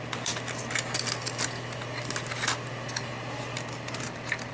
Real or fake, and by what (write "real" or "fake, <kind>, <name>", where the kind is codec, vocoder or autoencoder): real